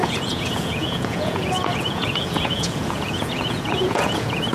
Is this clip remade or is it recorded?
remade